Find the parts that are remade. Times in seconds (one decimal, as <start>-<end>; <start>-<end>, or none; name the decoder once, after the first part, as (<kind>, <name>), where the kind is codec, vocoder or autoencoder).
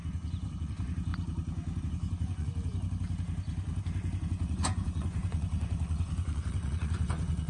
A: 0.0-1.1 (vocoder, Vocos); 1.8-2.7; 4.2-7.5